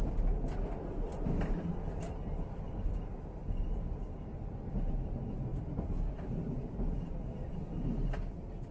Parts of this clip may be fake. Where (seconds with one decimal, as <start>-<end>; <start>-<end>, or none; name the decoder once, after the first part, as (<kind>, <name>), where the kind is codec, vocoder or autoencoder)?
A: none